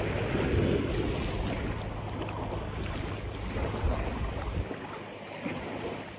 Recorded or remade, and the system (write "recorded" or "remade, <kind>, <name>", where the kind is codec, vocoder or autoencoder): recorded